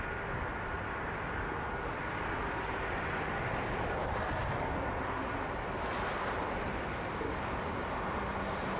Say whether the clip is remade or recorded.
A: recorded